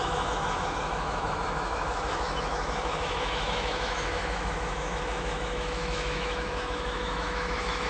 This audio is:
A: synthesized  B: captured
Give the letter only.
A